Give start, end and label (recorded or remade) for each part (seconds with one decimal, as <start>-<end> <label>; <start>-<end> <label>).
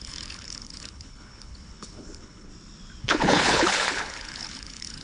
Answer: 0.0-2.5 remade; 2.5-3.0 recorded; 3.0-5.0 remade